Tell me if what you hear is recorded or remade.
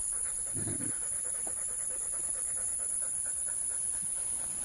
recorded